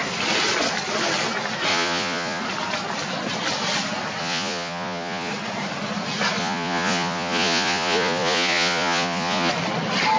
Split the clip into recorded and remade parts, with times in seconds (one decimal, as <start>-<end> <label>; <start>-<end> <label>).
0.0-1.7 recorded; 1.7-2.4 remade; 2.4-4.2 recorded; 4.2-5.3 remade; 5.3-6.4 recorded; 6.4-9.5 remade; 9.5-10.2 recorded